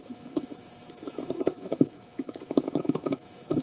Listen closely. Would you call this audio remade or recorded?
remade